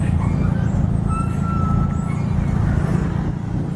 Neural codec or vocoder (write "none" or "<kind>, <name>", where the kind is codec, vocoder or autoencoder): none